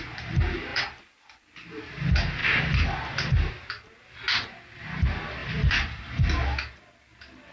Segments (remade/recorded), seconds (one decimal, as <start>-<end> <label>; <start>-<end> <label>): 0.0-0.7 recorded; 0.7-2.0 remade; 2.0-5.4 recorded; 5.4-6.0 remade; 6.0-7.5 recorded